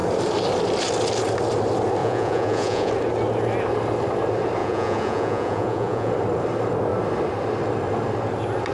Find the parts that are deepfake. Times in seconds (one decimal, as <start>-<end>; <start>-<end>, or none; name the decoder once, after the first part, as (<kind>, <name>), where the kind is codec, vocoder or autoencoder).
2.0-2.9 (vocoder, Vocos); 4.6-6.1